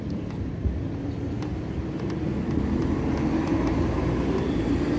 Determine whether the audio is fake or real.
real